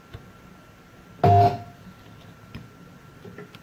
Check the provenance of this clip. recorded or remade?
recorded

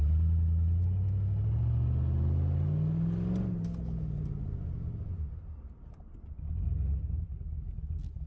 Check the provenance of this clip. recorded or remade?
recorded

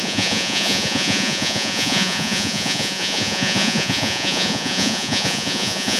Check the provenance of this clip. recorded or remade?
remade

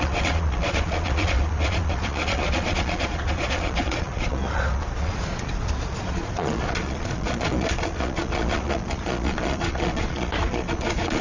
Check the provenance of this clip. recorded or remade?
remade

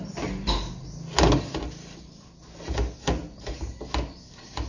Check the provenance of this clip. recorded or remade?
recorded